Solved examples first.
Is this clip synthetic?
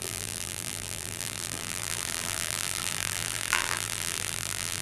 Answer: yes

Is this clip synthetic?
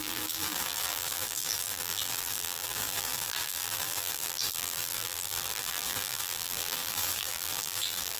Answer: yes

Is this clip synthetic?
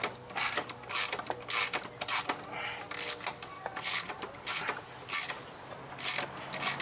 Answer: no